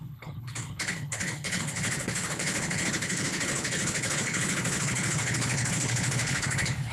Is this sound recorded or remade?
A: remade